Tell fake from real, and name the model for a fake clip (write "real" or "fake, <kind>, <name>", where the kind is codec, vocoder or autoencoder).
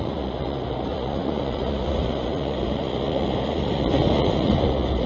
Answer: fake, vocoder, Vocos